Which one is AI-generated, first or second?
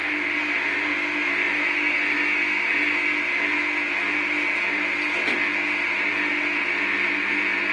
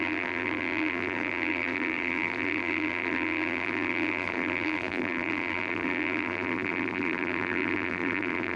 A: second